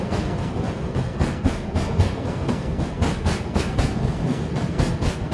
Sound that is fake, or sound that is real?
fake